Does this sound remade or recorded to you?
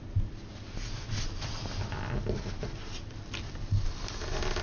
recorded